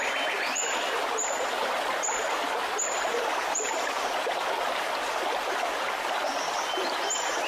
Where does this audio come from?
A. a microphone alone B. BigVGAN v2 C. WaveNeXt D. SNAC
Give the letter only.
A